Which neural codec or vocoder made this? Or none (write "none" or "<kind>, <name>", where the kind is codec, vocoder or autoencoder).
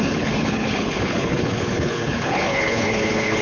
codec, HILCodec